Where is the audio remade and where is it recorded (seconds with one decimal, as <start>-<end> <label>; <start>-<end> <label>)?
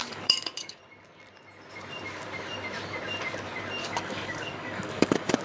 0.0-0.8 remade; 0.8-3.8 recorded; 3.8-5.4 remade